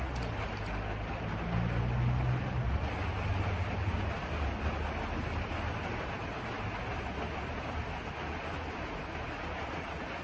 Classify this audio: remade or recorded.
recorded